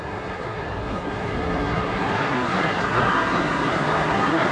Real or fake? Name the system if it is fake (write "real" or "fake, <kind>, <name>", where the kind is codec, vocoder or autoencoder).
fake, codec, SNAC